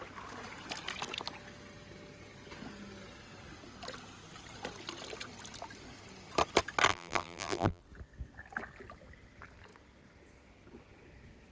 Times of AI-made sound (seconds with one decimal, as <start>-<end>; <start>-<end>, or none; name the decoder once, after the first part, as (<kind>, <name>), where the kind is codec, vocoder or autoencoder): 6.9-7.8 (vocoder, BigVGAN v2)